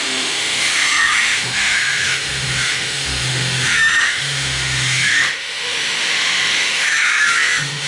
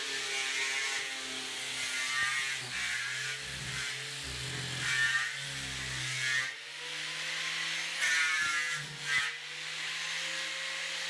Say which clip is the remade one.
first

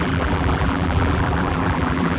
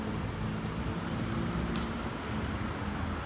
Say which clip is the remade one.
first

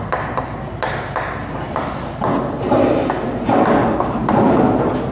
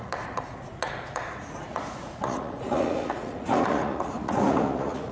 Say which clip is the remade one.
second